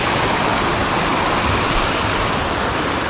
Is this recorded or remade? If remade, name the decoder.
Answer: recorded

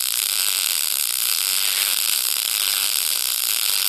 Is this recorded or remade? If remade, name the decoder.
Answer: recorded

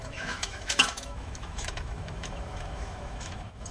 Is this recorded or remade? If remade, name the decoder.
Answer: remade, autoencoder, DAC-VAE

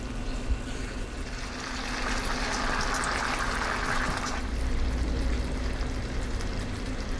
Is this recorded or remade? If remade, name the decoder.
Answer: recorded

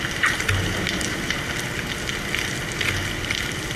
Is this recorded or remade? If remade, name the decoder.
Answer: recorded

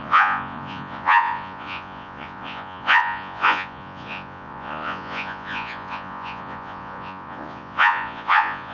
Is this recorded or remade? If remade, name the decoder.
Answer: remade, vocoder, Vocos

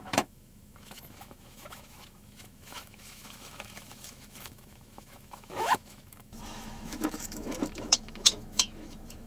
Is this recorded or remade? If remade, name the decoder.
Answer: remade, autoencoder, DAC-VAE